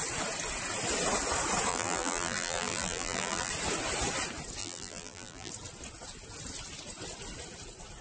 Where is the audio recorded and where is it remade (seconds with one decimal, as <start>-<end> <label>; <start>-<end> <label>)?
0.0-1.7 recorded; 1.7-3.5 remade; 3.5-4.6 recorded; 4.6-5.5 remade; 5.5-8.0 recorded